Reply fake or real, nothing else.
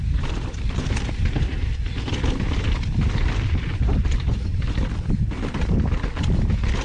fake